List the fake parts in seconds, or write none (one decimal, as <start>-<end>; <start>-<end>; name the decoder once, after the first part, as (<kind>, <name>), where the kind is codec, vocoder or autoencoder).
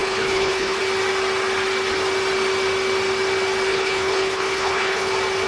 0.0-0.8 (codec, HILCodec); 3.7-5.1